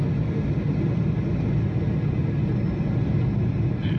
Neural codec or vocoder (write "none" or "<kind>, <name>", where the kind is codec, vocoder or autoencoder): none